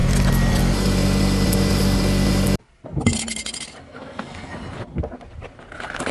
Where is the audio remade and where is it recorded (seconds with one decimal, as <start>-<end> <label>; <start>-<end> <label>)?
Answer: 0.0-3.8 recorded; 3.8-4.5 remade; 4.5-6.1 recorded